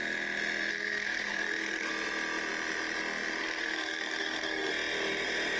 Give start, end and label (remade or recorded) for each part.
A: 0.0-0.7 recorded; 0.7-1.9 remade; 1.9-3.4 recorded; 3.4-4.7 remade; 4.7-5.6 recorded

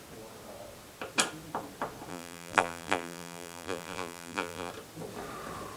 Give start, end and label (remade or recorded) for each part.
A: 0.0-2.1 recorded; 2.1-4.7 remade; 4.7-5.8 recorded

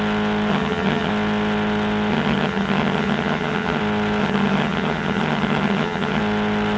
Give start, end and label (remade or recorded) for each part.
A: 0.0-0.5 recorded; 0.5-1.1 remade; 1.1-2.1 recorded; 2.1-3.8 remade; 3.8-4.2 recorded; 4.2-6.2 remade; 6.2-6.8 recorded

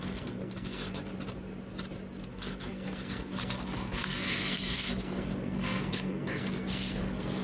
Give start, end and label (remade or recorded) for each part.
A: 0.0-1.1 remade; 1.1-2.3 recorded; 2.3-7.4 remade

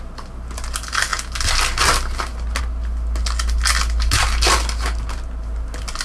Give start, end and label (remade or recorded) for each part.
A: 0.0-6.0 recorded